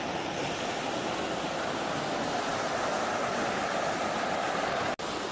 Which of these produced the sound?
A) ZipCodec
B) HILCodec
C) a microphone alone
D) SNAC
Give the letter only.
C